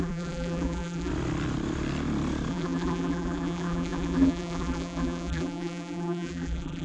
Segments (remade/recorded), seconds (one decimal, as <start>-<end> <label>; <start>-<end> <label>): 0.0-1.1 remade; 1.1-2.5 recorded; 2.5-6.8 remade